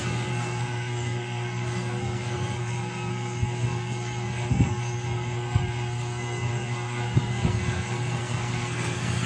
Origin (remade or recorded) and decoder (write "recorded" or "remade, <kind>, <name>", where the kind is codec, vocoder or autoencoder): remade, codec, SNAC